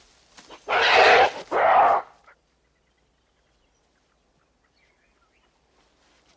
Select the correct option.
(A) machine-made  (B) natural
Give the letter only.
B